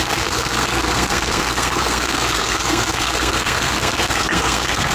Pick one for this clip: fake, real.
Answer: fake